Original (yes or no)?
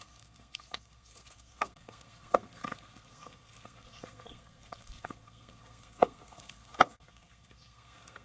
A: no